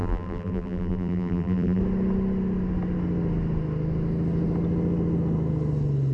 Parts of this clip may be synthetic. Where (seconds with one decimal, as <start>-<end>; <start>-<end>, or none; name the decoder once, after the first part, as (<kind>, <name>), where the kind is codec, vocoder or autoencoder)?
0.0-1.8 (vocoder, BigVGAN v2)

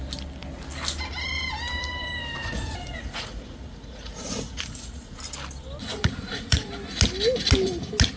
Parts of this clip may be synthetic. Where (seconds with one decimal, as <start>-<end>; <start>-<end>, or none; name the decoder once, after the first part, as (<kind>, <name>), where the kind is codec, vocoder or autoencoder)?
2.4-5.2 (vocoder, Vocos); 5.8-6.7